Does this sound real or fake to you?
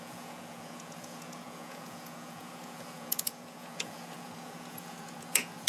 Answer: fake